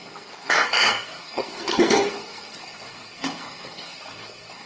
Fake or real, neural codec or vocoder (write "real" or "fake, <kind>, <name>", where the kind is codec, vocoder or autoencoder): fake, codec, SNAC